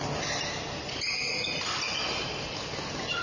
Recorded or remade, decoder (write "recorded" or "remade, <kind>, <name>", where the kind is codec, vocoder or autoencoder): recorded